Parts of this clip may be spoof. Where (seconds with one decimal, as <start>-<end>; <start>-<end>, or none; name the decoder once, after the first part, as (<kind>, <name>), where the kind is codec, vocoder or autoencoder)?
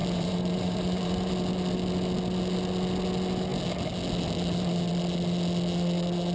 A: 0.0-1.3 (vocoder, BigVGAN v2)